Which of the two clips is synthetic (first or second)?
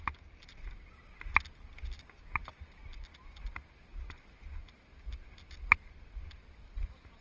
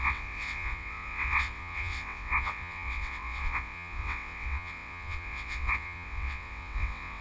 second